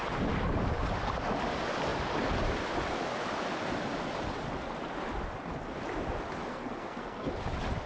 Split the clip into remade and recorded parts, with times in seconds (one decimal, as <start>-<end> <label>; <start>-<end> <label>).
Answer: 0.0-6.5 recorded; 6.5-7.3 remade; 7.3-7.9 recorded